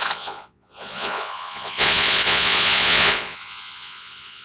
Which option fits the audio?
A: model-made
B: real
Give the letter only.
A